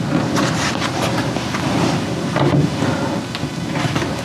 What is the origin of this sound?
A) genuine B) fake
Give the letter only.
A